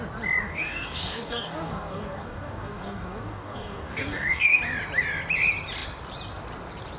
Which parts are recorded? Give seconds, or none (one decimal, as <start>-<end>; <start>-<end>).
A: 0.0-0.4; 4.6-7.0